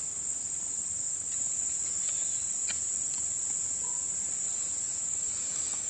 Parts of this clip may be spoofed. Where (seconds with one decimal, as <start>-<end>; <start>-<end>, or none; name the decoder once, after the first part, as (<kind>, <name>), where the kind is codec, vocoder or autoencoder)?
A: 4.9-5.9 (autoencoder, DAC-VAE)